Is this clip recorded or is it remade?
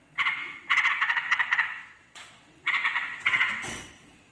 remade